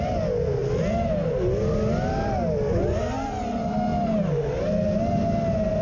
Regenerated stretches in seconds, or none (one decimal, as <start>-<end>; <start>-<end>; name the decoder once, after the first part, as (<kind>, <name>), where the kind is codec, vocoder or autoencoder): none

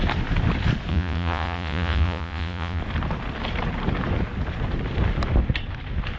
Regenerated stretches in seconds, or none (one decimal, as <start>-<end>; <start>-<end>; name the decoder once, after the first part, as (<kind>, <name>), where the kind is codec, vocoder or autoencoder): 0.9-2.8 (vocoder, Vocos)